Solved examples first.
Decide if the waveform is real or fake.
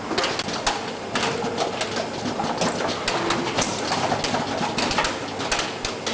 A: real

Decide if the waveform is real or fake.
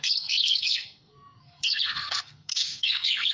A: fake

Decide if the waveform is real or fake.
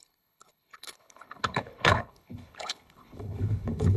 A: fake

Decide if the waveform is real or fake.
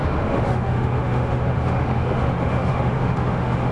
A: fake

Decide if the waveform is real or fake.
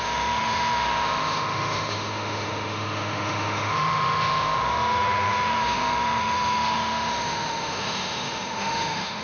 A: fake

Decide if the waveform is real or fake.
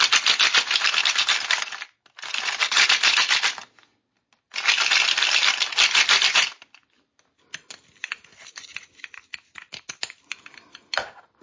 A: real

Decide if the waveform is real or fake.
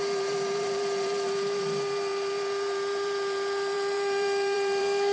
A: fake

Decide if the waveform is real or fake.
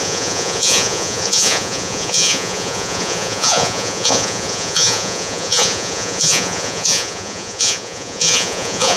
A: fake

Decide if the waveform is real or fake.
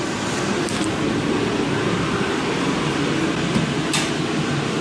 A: real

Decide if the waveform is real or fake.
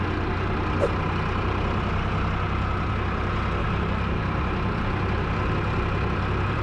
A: real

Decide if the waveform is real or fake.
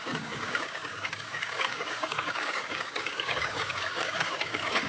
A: fake